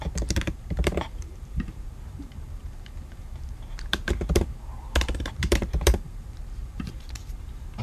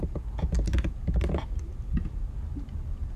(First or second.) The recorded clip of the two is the second